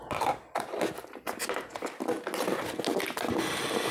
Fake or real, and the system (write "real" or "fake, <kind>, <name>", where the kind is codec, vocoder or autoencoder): real